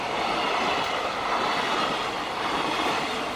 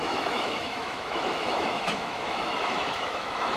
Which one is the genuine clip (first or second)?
first